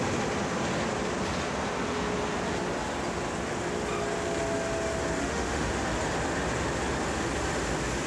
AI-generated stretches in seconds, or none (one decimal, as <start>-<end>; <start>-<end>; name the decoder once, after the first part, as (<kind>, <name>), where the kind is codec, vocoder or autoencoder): 5.2-5.7 (autoencoder, DAC-VAE)